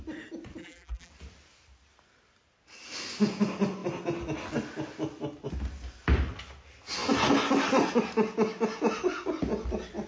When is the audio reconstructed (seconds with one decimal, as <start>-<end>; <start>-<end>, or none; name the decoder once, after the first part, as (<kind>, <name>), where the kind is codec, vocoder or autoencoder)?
0.6-1.1 (vocoder, BigVGAN v2)